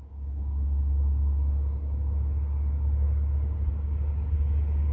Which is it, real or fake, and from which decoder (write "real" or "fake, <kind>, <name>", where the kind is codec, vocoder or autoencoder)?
real